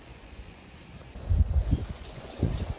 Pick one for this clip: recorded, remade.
remade